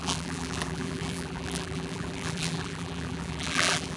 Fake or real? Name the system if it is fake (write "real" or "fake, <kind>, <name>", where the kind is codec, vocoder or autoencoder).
fake, vocoder, BigVGAN v2